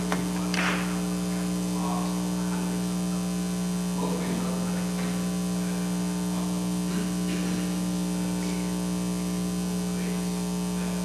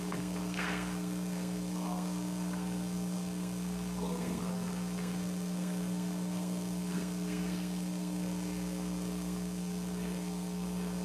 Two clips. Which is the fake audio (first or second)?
second